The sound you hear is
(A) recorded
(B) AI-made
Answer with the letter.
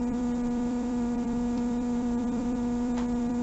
B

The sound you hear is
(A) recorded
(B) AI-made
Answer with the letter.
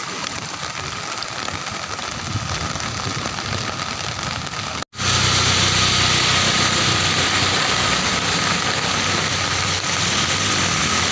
A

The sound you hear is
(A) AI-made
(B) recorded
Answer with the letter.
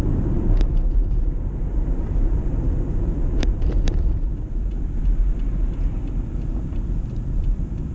A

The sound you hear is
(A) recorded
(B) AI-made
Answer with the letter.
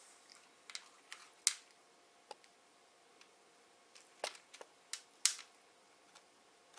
A